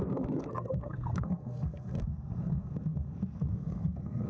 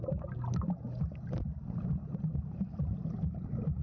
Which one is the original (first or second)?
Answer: second